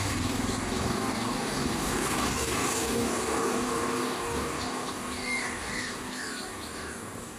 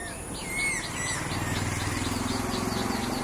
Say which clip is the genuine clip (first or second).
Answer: second